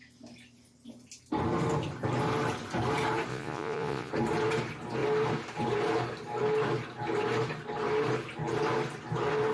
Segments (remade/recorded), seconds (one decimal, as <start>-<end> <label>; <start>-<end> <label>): 0.0-3.3 recorded; 3.3-4.1 remade; 4.1-9.5 recorded